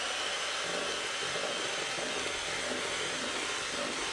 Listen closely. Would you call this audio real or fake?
real